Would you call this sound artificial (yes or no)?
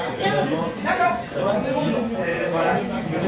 yes